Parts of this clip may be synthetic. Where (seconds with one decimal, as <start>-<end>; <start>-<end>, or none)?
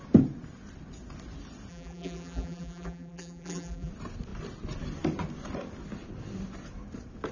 1.7-3.9